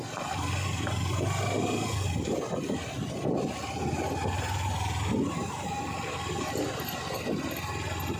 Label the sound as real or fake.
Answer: real